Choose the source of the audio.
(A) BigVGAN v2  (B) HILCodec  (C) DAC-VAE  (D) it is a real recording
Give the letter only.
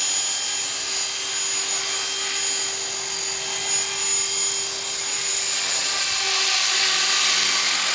D